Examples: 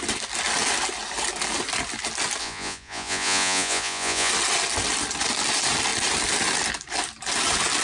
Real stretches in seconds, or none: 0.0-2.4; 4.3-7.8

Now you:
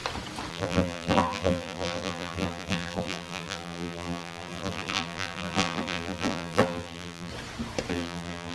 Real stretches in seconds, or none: 0.0-0.5; 7.3-7.9

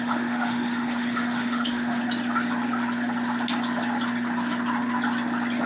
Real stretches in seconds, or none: 2.0-5.7

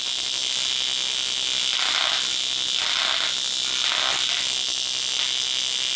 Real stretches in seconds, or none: 0.0-6.0